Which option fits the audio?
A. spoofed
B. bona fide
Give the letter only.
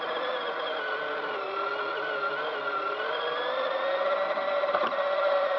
B